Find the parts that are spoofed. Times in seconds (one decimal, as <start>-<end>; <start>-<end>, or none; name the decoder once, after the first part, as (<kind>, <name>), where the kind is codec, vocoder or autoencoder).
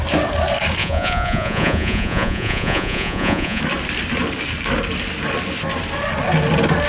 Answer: 0.8-3.6 (vocoder, Vocos)